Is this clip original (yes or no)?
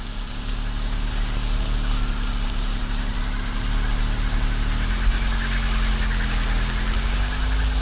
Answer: yes